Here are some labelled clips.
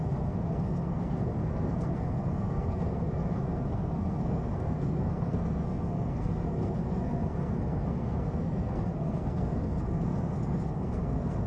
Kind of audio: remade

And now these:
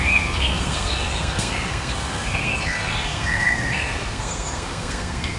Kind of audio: remade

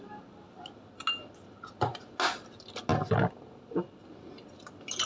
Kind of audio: recorded